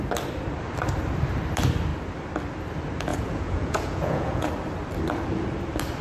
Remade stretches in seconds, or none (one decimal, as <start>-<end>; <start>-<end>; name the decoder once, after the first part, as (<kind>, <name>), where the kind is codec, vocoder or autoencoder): 3.1-4.5 (vocoder, Vocos)